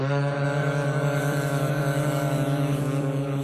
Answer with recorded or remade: remade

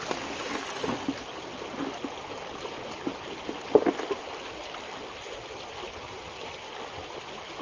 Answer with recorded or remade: recorded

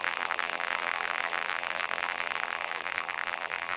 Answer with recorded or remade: remade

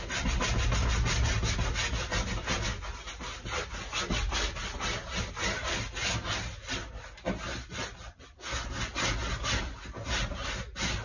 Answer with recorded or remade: recorded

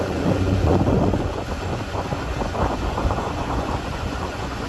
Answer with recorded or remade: remade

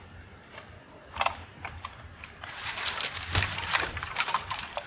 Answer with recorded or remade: remade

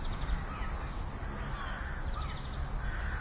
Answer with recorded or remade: recorded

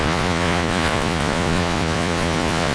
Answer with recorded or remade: remade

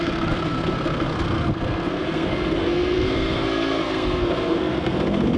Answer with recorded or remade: remade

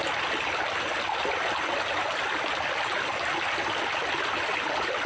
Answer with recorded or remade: recorded